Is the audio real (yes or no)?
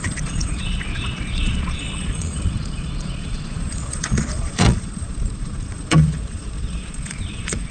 no